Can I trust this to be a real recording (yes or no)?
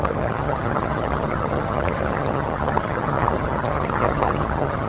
no